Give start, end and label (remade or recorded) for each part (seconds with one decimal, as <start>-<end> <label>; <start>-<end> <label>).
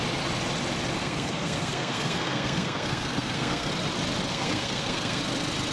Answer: 0.0-1.0 recorded; 1.0-3.7 remade; 3.7-4.3 recorded; 4.3-5.2 remade; 5.2-5.7 recorded